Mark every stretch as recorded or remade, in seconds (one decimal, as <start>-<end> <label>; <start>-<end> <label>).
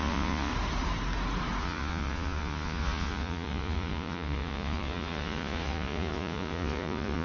0.0-0.5 remade; 0.5-1.6 recorded; 1.6-7.2 remade